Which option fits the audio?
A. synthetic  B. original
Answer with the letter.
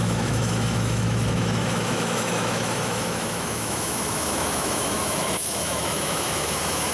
A